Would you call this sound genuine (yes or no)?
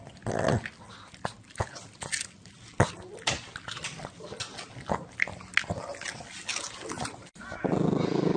yes